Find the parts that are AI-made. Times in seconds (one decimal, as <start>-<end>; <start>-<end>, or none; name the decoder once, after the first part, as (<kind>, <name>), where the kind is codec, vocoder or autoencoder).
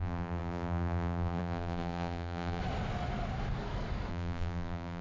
0.0-2.6 (vocoder, BigVGAN v2); 4.1-5.0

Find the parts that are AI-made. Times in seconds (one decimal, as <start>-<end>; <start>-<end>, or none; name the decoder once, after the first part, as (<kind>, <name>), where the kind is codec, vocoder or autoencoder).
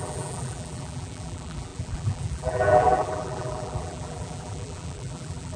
0.0-5.6 (vocoder, BigVGAN v2)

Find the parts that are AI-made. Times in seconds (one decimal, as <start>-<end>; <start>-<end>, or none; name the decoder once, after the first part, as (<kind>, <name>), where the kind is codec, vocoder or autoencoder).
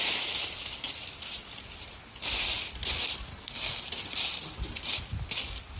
3.3-3.8 (codec, SNAC)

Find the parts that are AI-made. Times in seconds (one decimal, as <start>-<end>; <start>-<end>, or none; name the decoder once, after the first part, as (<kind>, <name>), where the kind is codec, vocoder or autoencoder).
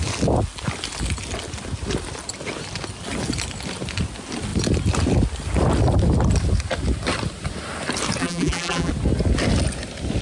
8.2-8.9 (vocoder, BigVGAN v2)